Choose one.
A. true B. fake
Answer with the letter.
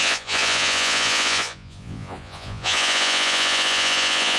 B